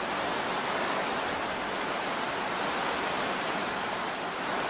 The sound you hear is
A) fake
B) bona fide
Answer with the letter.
B